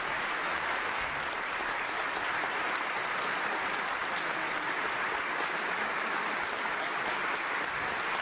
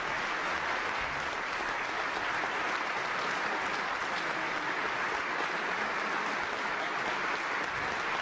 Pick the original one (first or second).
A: second